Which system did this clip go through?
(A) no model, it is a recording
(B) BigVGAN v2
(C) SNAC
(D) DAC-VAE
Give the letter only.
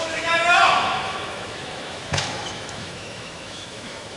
D